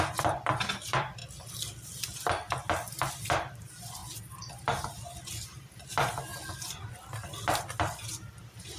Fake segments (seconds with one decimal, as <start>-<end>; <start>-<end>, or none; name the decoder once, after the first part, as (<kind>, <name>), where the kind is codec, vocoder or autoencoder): 0.0-1.2 (vocoder, BigVGAN v2); 3.1-4.0; 5.3-8.8